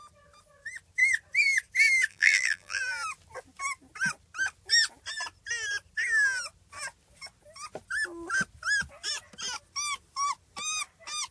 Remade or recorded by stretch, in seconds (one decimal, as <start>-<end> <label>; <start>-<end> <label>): 0.0-2.1 recorded; 2.1-2.8 remade; 2.8-11.3 recorded